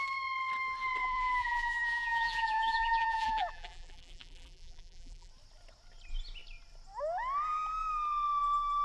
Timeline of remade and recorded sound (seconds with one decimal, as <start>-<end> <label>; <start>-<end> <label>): 0.0-1.0 recorded; 1.0-5.3 remade; 5.3-8.8 recorded